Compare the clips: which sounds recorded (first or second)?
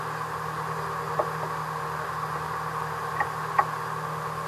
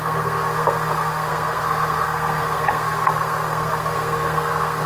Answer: first